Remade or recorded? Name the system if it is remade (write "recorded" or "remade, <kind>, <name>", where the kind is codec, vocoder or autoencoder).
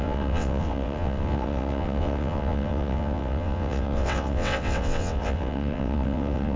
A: remade, vocoder, WaveNeXt